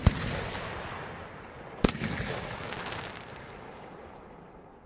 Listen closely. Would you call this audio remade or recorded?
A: recorded